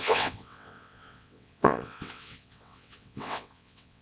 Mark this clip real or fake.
fake